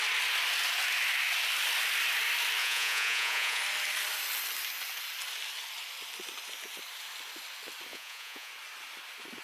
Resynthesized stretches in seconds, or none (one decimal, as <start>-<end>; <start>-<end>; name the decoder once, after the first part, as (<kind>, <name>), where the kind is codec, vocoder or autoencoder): 2.6-3.6 (vocoder, Vocos); 7.9-8.5